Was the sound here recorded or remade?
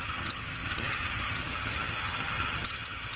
remade